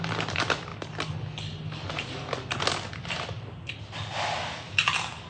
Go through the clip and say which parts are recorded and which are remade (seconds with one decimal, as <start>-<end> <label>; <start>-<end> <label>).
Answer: 0.0-5.3 recorded